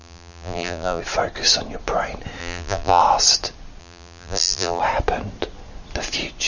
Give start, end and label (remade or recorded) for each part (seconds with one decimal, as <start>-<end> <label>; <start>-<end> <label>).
0.0-1.0 remade; 1.0-2.4 recorded; 2.4-3.0 remade; 3.0-3.8 recorded; 3.8-4.8 remade; 4.8-6.5 recorded